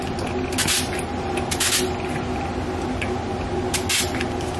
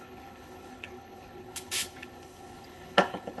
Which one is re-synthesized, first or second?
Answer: second